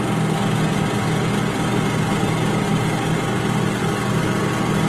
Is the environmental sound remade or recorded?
recorded